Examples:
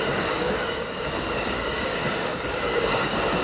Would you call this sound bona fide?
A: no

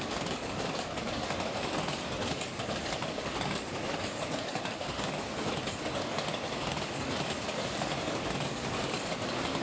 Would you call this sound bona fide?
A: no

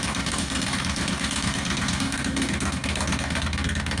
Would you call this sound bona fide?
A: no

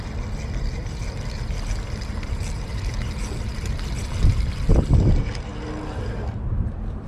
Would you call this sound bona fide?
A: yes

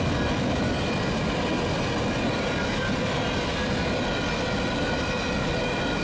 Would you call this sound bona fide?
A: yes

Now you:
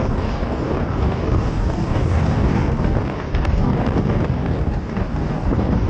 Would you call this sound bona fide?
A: no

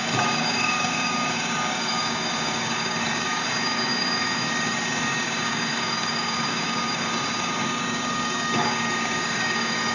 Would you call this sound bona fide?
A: no